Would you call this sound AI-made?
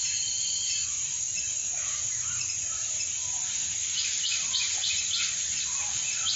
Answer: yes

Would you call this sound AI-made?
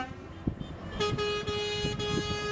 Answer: no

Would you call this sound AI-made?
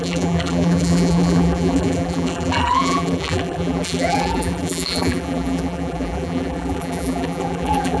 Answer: yes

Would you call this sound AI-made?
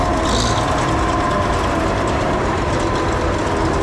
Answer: yes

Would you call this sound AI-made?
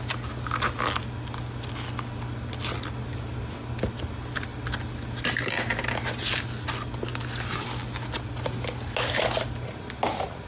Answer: no